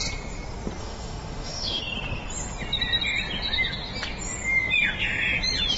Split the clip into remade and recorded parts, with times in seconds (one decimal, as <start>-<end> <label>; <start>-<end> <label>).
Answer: 0.0-0.8 recorded; 0.8-1.8 remade; 1.8-5.8 recorded